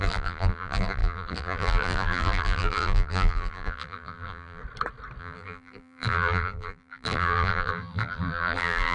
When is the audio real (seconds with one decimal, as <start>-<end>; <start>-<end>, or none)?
4.6-5.2